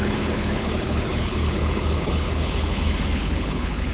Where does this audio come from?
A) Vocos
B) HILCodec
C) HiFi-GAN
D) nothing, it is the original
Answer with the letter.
B